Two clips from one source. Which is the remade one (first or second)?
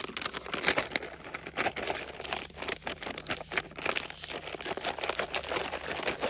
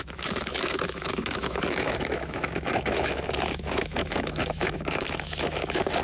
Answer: second